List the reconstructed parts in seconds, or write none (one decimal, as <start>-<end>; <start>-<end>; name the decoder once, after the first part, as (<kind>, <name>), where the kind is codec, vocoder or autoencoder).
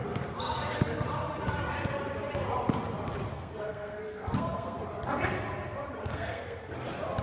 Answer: 3.3-4.8 (codec, SNAC); 6.0-6.7